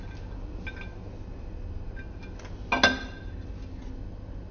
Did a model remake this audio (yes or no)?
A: no